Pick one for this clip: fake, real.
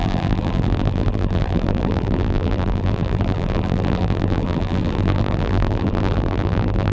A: fake